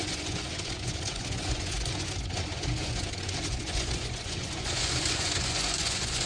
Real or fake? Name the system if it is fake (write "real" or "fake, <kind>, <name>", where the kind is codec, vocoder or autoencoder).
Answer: fake, vocoder, Vocos